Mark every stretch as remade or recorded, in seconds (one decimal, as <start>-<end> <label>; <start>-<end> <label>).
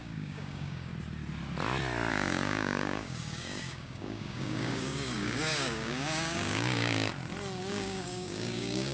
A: 0.0-0.9 remade; 0.9-2.1 recorded; 2.1-7.1 remade; 7.1-7.6 recorded; 7.6-8.9 remade